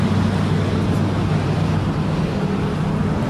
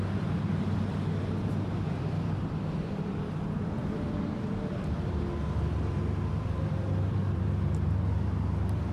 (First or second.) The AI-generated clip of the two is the second